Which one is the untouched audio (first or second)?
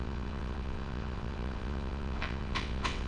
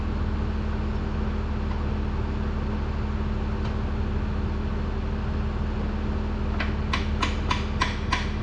second